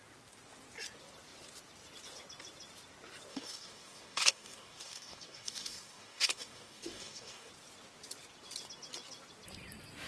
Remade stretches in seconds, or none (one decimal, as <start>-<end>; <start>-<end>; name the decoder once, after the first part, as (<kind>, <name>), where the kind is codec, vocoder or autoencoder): 3.3-7.5 (codec, DAC)